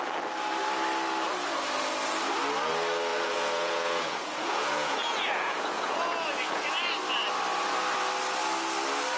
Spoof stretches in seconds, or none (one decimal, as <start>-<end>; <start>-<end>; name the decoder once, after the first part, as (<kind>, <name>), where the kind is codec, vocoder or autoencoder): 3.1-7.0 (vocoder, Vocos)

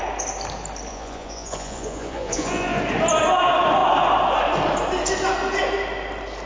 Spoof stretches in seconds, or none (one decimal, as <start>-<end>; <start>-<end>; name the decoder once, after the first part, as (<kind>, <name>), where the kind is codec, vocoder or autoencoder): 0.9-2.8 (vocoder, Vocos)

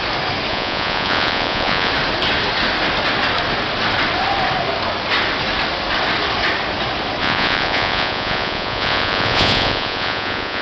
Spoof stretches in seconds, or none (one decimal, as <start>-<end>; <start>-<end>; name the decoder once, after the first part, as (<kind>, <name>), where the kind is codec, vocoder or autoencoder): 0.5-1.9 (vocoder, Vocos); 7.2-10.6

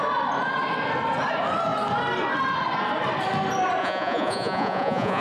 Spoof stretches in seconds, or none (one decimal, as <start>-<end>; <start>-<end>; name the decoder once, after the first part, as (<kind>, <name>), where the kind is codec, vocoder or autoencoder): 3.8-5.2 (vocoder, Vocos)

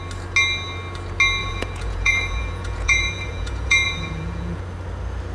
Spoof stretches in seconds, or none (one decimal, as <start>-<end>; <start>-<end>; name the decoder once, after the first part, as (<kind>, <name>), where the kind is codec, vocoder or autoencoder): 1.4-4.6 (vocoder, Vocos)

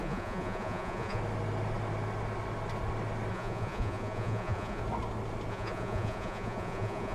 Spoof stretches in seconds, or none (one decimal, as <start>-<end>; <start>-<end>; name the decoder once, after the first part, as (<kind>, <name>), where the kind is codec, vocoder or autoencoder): 0.0-1.2 (vocoder, Vocos); 3.3-4.8; 5.5-7.1